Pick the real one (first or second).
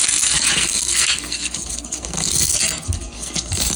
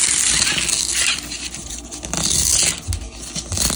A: second